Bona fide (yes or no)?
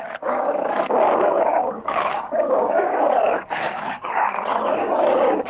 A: no